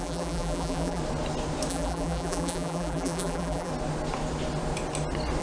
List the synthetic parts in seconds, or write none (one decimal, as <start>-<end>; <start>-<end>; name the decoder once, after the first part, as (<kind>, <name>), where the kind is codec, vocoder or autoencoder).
0.0-1.0 (vocoder, BigVGAN v2); 1.7-3.7